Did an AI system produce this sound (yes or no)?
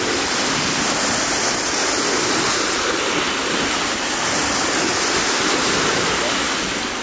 no